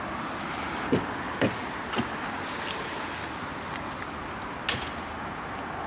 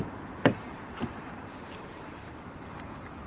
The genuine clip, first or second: first